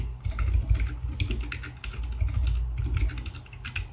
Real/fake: real